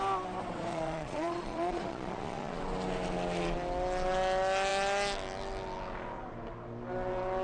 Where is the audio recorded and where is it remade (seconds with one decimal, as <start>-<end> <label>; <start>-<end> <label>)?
0.0-0.7 recorded; 0.7-2.6 remade; 2.6-7.4 recorded

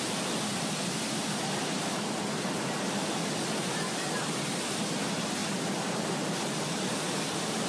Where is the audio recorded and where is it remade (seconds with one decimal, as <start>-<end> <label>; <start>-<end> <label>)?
0.0-7.7 recorded

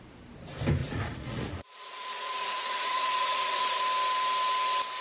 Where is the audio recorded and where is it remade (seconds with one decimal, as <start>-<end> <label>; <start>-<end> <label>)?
0.0-0.8 recorded; 0.8-3.8 remade; 3.8-5.0 recorded

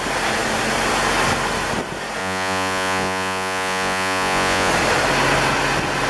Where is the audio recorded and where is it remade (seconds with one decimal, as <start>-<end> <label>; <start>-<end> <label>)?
0.0-2.2 recorded; 2.2-4.7 remade; 4.7-6.1 recorded